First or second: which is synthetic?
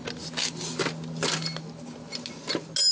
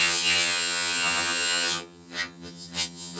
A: second